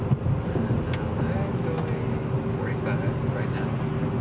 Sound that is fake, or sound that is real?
real